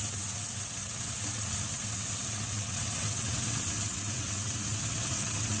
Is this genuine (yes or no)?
no